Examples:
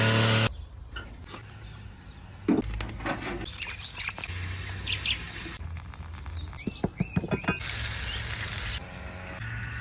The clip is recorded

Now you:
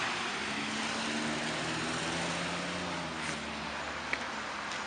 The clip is recorded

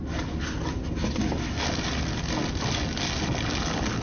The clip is recorded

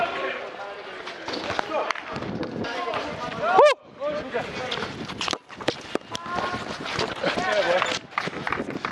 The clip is recorded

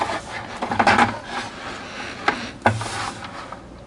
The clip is recorded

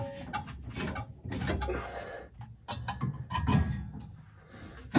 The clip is recorded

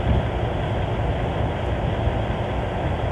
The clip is recorded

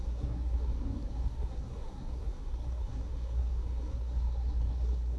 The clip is remade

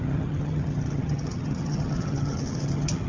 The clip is remade